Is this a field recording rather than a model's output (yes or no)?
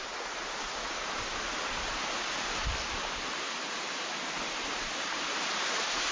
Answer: no